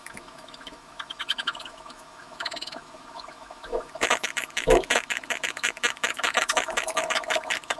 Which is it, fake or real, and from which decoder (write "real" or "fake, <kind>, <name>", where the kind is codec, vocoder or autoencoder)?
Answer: fake, autoencoder, DAC-VAE